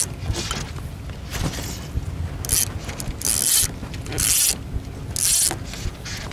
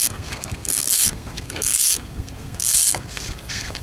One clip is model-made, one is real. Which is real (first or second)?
first